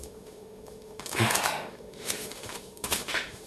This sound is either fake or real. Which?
fake